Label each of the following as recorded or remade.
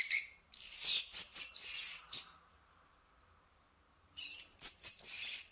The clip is remade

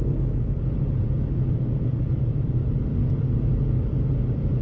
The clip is remade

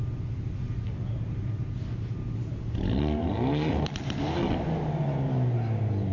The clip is recorded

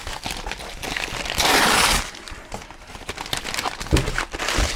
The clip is remade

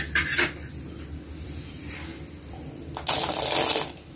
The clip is recorded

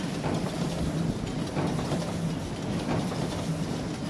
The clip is remade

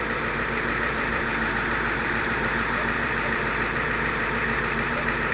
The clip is remade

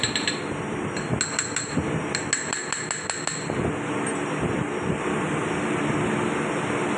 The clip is recorded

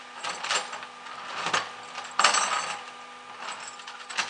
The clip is recorded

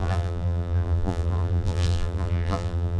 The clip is remade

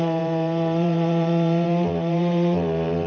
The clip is remade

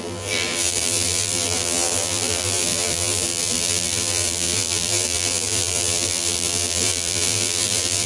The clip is remade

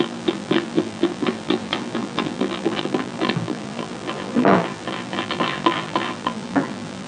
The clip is remade